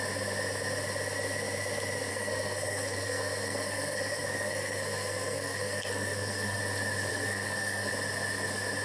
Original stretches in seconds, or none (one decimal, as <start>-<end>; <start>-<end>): 0.0-2.1; 6.6-7.1; 7.9-8.8